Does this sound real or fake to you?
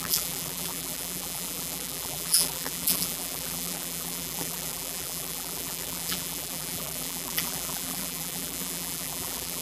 fake